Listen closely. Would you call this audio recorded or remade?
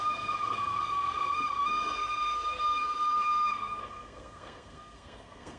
remade